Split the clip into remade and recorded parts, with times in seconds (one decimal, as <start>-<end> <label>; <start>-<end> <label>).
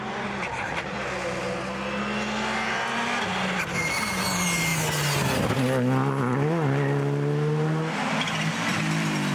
0.0-9.3 recorded